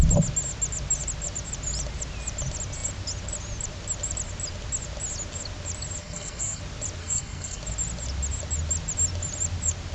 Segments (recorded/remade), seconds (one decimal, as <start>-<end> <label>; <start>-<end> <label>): 0.0-6.0 recorded; 6.0-6.6 remade; 6.6-7.0 recorded; 7.0-7.6 remade; 7.6-9.9 recorded

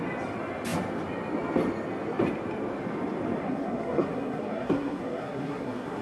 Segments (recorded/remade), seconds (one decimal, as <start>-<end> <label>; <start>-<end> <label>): 0.0-3.4 recorded; 3.4-6.0 remade

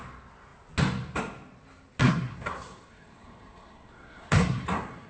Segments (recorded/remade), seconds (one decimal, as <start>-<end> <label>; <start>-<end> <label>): 0.0-2.0 recorded; 2.0-5.1 remade

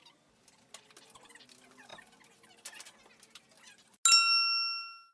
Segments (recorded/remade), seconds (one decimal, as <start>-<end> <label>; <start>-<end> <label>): 0.0-5.1 recorded

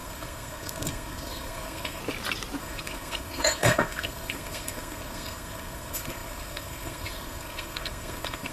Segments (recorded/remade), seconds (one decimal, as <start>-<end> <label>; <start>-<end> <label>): 0.0-2.0 remade; 2.0-2.6 recorded; 2.6-8.5 remade